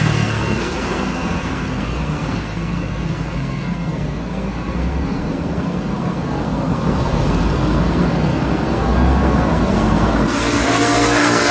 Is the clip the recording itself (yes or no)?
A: no